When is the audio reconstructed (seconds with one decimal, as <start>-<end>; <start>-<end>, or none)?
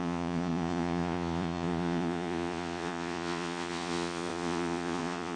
0.0-5.4